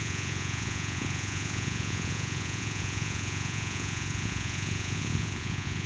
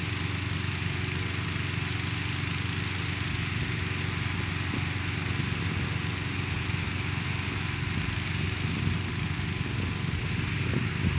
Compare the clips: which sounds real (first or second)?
second